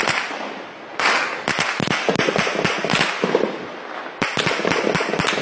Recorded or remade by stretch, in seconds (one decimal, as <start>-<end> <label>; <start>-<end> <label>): 0.0-5.4 recorded